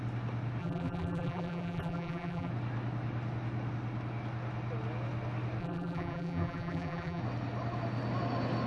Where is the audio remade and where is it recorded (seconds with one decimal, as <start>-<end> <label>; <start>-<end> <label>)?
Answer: 0.0-0.6 recorded; 0.6-2.5 remade; 2.5-5.6 recorded; 5.6-7.2 remade; 7.2-8.7 recorded